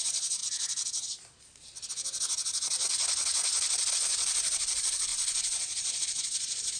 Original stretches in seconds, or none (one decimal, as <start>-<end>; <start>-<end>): 0.4-3.9

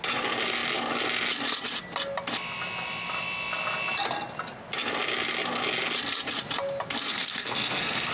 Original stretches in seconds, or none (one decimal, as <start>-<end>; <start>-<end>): 0.0-7.1